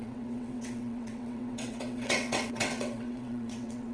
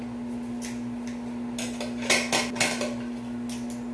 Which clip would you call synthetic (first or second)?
first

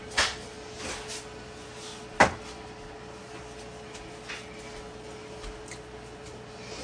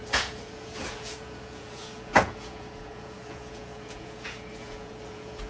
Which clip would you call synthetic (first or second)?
second